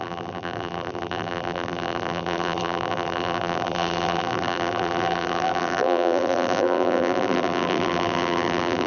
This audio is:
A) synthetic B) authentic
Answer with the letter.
A